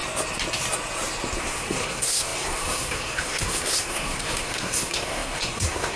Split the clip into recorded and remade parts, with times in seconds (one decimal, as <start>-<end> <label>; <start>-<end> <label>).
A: 0.0-1.4 recorded; 1.4-6.0 remade

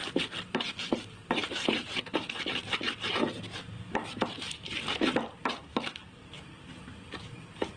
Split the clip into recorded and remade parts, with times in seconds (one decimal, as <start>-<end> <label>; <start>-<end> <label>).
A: 0.0-7.8 recorded